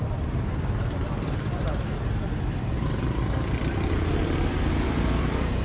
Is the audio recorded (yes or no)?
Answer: no